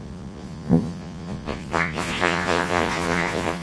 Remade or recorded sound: remade